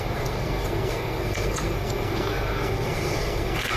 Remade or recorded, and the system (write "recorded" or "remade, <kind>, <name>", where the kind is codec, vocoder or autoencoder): remade, codec, SNAC